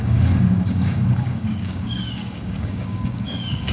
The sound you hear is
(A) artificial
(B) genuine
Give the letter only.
A